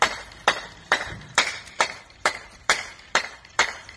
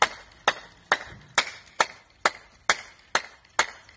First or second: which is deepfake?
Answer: first